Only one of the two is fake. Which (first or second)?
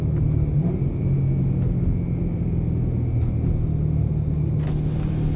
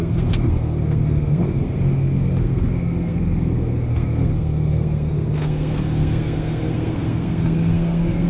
second